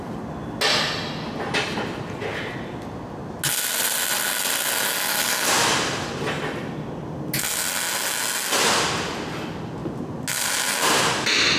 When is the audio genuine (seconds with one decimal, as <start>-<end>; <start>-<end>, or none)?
0.0-11.6